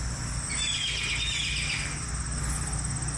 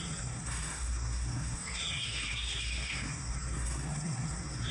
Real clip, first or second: first